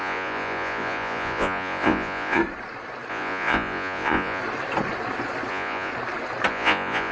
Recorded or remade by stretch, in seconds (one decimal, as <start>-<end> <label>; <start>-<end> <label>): 0.0-2.4 remade; 2.4-3.1 recorded; 3.1-4.4 remade; 4.4-5.5 recorded; 5.5-5.9 remade; 5.9-6.5 recorded; 6.5-7.1 remade